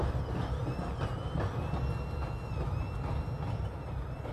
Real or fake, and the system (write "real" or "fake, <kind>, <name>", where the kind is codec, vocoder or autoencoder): real